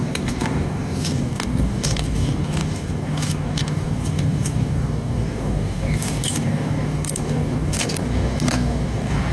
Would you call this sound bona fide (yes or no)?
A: no